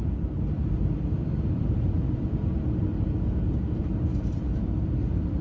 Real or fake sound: real